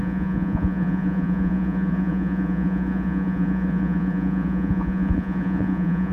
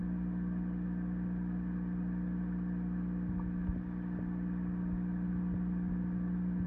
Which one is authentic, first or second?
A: second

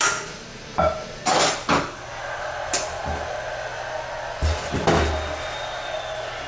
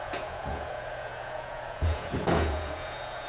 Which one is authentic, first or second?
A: first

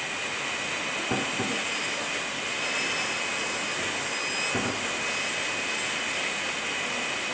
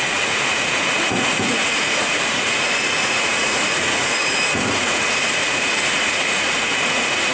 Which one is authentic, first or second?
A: first